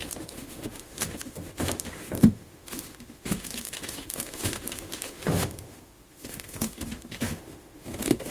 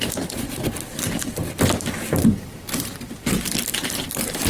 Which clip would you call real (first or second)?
second